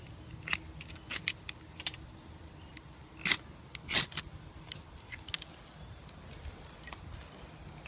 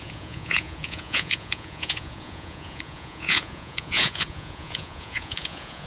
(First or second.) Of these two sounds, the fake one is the second